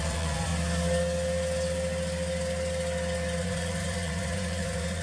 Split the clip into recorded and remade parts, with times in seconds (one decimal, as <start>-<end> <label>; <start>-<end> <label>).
0.0-0.5 remade; 0.5-3.4 recorded; 3.4-5.0 remade